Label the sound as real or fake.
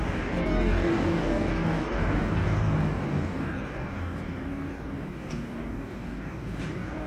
fake